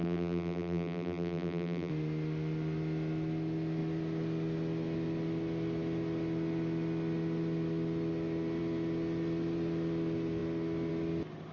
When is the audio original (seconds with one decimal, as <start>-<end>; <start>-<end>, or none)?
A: 1.9-11.5